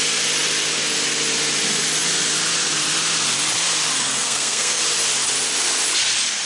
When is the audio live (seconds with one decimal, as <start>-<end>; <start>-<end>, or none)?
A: 0.0-4.1; 4.8-6.5